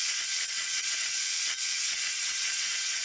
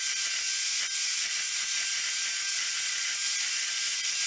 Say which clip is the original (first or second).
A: second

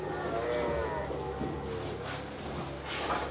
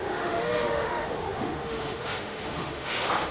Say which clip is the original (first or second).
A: first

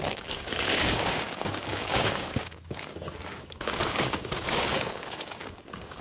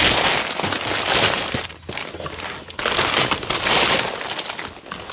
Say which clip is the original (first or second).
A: second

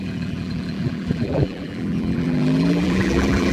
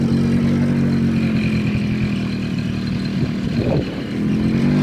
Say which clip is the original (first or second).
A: second